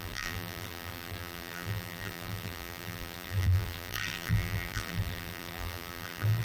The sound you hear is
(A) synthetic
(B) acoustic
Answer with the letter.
A